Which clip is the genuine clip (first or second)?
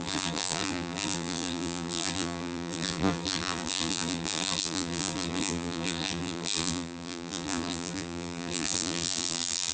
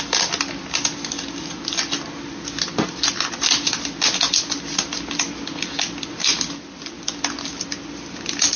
second